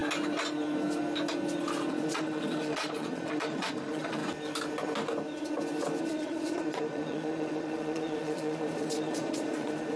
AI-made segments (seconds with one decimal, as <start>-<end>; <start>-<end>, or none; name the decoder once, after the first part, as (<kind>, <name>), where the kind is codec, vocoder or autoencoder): 1.9-4.2 (vocoder, Vocos); 6.0-10.0